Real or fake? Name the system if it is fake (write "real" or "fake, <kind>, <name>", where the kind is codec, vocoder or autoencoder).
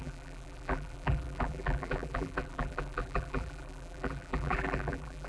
fake, vocoder, BigVGAN v2